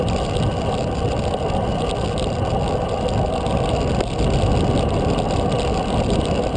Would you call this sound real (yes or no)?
yes